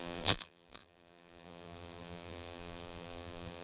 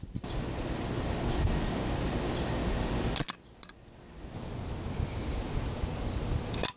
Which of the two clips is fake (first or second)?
first